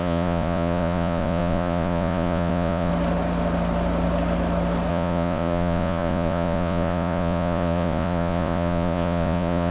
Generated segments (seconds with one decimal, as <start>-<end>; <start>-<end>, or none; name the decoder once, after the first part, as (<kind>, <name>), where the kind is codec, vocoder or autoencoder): 0.0-2.9 (vocoder, Vocos); 4.9-9.7